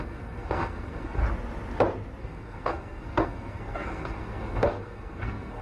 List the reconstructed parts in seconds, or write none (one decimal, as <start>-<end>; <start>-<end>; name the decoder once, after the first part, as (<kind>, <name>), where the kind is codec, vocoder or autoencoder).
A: 0.0-1.2 (codec, SNAC); 2.2-5.6